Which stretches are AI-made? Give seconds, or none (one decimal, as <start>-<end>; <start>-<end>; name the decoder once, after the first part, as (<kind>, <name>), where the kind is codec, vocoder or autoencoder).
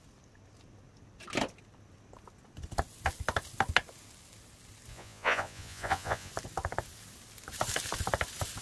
4.9-6.3 (vocoder, Vocos)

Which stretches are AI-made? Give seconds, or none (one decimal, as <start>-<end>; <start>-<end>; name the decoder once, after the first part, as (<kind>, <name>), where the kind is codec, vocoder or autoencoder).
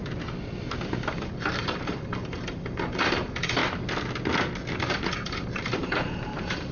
1.1-3.6 (vocoder, BigVGAN v2); 4.8-6.7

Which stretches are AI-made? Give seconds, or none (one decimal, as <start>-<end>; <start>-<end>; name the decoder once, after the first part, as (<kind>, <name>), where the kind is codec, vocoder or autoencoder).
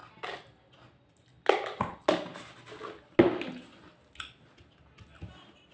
none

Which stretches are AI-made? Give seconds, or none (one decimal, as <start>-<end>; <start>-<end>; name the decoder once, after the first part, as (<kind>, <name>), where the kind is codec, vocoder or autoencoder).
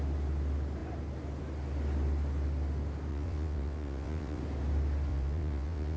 3.1-4.4 (vocoder, WaveNeXt); 5.1-6.0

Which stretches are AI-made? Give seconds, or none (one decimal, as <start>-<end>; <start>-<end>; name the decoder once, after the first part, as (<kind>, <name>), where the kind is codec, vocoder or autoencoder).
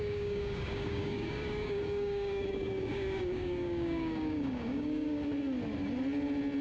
0.0-5.2 (codec, DAC)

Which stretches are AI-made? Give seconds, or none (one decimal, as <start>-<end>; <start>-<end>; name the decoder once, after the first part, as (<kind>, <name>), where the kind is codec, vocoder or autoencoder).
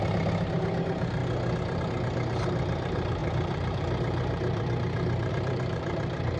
0.0-1.2 (vocoder, BigVGAN v2); 1.8-6.4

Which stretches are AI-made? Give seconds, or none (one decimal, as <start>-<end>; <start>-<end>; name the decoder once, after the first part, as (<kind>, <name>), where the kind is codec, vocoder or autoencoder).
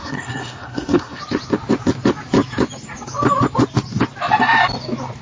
0.0-1.2 (codec, SNAC)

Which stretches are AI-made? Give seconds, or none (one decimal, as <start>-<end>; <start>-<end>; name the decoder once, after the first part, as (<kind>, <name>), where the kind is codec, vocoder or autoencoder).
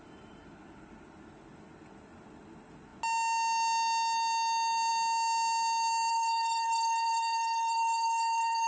6.1-8.7 (codec, SNAC)